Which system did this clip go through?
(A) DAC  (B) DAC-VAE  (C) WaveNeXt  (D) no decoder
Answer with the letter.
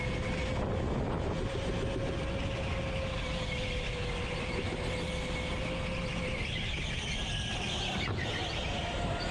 D